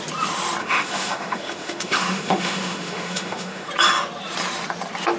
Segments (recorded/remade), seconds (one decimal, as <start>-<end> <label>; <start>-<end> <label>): 0.0-0.6 recorded; 0.6-3.7 remade; 3.7-5.2 recorded